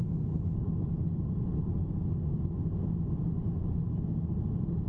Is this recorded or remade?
recorded